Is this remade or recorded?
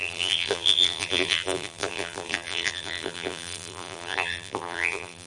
remade